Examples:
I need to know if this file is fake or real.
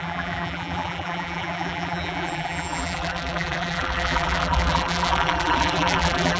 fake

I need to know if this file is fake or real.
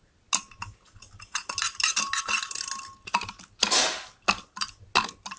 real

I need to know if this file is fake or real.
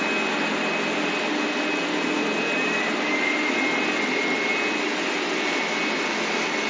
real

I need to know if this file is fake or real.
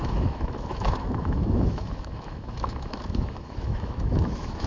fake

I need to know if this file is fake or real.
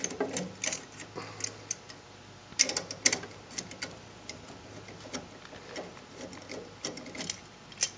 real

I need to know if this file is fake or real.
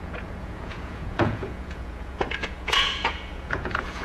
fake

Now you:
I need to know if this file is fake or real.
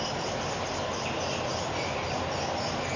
real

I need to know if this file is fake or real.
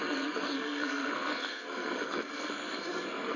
fake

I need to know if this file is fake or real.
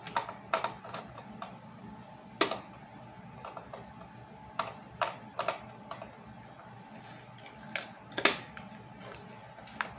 real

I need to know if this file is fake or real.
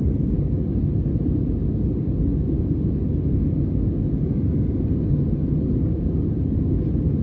real